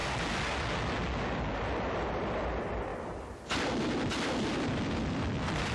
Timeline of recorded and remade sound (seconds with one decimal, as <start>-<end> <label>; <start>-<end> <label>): 0.0-2.1 recorded; 2.1-5.7 remade

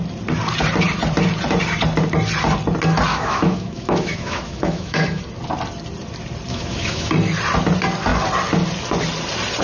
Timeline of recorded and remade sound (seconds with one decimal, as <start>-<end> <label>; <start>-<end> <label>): 0.0-3.1 recorded; 3.1-5.2 remade; 5.2-6.5 recorded; 6.5-7.1 remade; 7.1-9.6 recorded

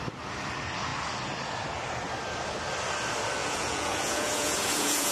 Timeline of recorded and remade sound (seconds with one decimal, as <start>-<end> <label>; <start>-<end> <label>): 0.0-3.4 recorded; 3.4-5.1 remade

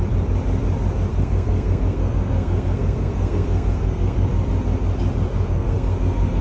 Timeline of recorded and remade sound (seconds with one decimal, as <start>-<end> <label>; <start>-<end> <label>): 0.0-1.1 recorded; 1.1-4.3 remade; 4.3-5.3 recorded; 5.3-6.4 remade

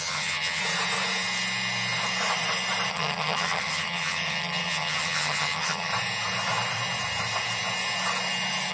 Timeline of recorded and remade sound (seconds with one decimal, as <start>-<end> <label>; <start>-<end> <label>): 0.0-0.6 remade; 0.6-2.9 recorded; 2.9-5.9 remade; 5.9-8.7 recorded

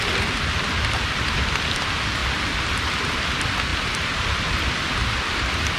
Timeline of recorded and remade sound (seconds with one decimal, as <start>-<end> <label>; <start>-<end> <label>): 0.0-5.8 recorded

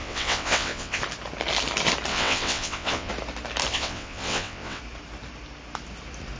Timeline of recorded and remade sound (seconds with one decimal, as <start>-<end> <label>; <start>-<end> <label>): 0.0-1.0 remade; 1.0-2.1 recorded; 2.1-3.1 remade; 3.1-3.7 recorded; 3.7-4.8 remade; 4.8-6.4 recorded